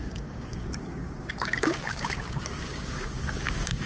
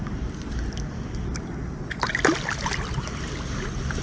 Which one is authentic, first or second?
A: second